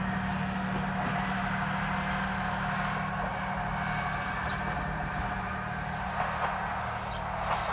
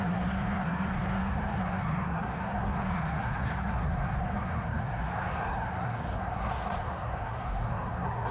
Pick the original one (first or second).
first